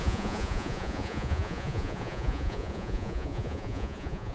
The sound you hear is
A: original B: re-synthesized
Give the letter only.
B